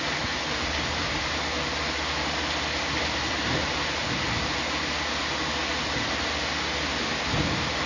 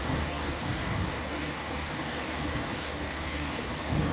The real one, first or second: first